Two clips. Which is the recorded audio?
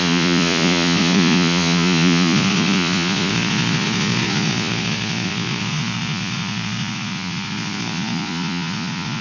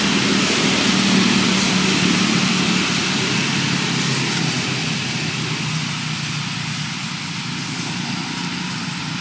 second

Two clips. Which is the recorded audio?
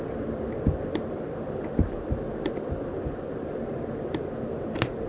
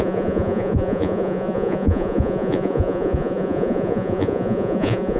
first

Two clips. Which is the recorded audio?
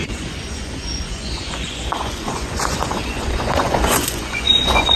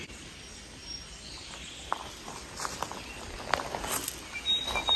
second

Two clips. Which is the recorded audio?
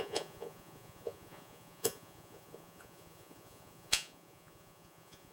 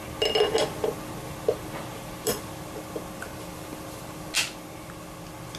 second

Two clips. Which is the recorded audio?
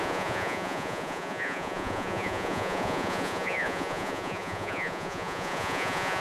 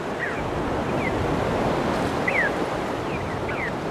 second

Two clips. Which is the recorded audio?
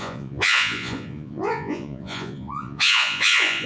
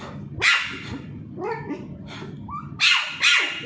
second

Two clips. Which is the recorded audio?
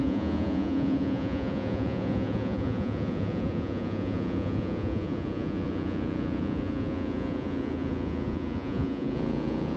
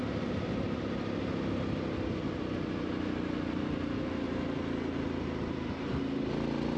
second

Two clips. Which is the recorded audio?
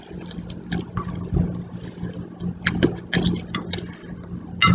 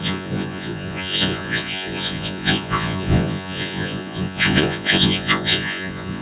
first